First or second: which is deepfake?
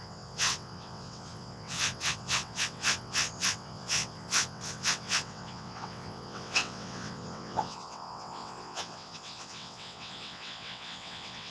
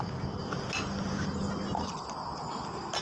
first